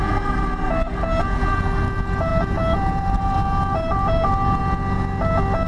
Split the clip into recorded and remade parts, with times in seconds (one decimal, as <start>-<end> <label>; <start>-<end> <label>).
0.0-2.3 recorded; 2.3-4.6 remade; 4.6-5.7 recorded